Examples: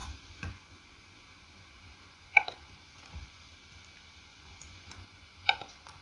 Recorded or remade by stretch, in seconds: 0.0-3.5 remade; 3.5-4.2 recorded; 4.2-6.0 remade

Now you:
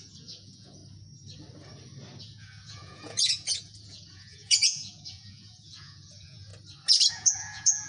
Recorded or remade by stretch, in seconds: 0.0-0.8 remade; 0.8-2.2 recorded; 2.2-6.5 remade; 6.5-7.1 recorded; 7.1-7.9 remade

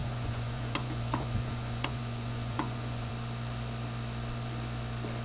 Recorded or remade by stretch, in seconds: 0.0-3.1 remade; 3.1-5.2 recorded